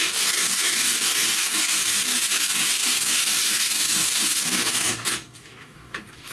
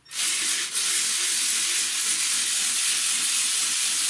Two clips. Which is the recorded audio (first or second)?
second